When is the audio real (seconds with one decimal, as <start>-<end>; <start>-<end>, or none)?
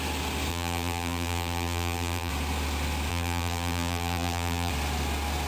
0.0-0.5; 2.3-3.1; 4.7-5.5